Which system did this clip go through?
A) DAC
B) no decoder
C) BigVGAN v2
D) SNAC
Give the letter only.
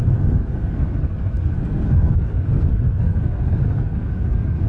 D